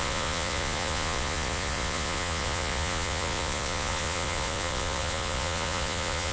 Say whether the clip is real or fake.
fake